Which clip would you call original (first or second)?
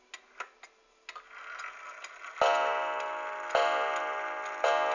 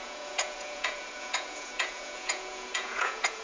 first